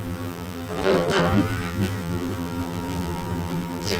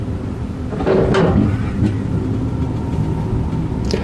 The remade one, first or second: first